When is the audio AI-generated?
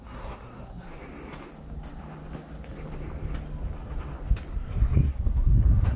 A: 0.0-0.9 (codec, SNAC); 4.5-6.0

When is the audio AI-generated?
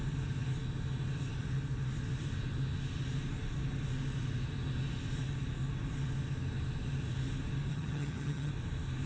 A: 7.7-8.5 (vocoder, HiFi-GAN)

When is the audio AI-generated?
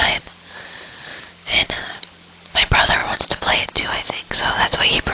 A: none